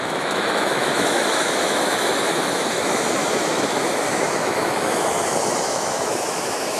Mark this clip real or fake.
fake